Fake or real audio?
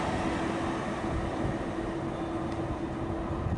real